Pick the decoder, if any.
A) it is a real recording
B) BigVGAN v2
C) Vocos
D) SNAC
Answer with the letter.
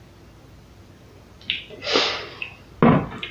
A